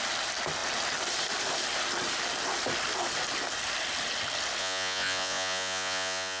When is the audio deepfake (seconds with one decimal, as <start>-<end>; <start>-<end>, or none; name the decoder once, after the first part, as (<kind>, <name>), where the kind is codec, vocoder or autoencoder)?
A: 4.6-6.4 (vocoder, Vocos)